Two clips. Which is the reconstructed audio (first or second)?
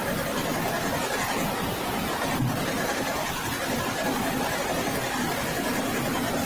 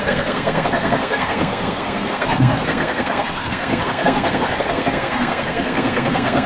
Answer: second